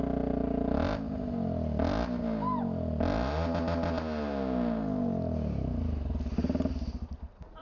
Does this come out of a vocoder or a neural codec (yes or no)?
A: no